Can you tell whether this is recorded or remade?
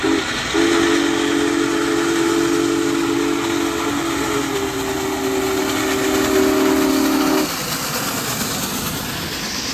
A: recorded